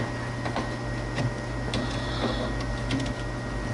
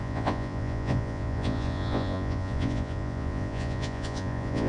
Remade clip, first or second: second